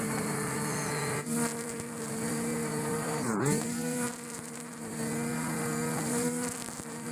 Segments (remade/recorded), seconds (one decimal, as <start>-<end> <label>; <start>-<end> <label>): 0.0-1.5 remade; 1.5-2.1 recorded; 2.1-5.0 remade; 5.0-6.1 recorded; 6.1-7.1 remade